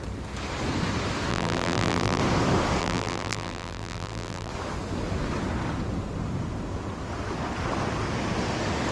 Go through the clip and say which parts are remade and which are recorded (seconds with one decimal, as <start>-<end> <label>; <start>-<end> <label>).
0.0-1.3 recorded; 1.3-2.2 remade; 2.2-2.8 recorded; 2.8-4.5 remade; 4.5-8.9 recorded